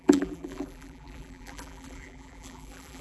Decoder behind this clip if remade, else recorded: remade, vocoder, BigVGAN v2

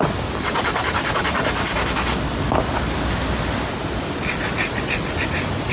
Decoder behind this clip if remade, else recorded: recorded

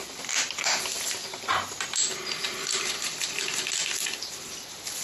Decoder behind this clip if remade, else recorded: remade, vocoder, BigVGAN v2